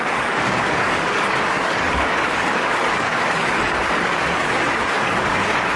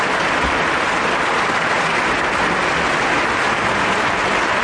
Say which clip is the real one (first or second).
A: second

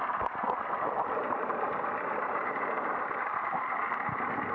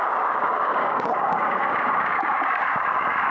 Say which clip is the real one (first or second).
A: first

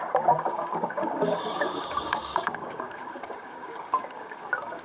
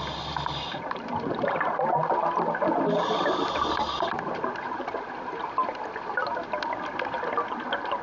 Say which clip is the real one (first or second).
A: second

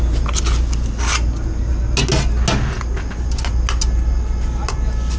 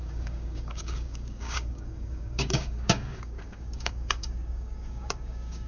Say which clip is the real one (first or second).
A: first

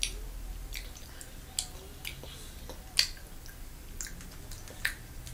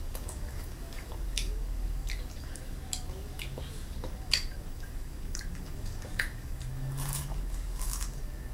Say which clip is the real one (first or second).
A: first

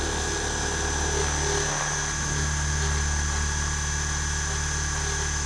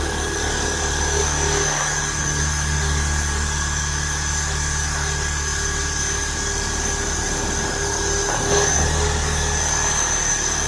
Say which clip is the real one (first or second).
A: first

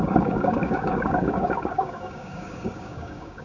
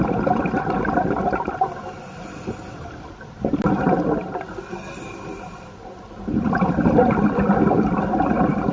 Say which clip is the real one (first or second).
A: second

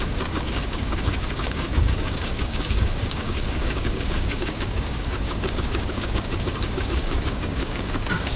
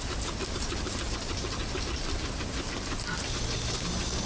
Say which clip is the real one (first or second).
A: second